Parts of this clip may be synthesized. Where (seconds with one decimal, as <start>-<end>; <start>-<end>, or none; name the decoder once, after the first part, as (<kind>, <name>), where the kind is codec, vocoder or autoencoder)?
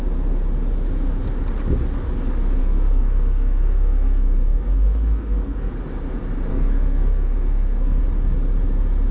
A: 2.6-5.7 (codec, SNAC); 6.5-8.0